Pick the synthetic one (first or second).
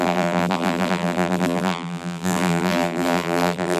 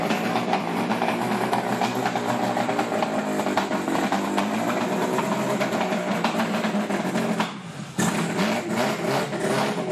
first